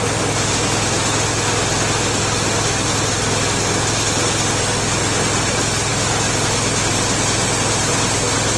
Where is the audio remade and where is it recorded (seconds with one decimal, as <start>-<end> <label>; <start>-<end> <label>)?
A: 0.0-8.6 recorded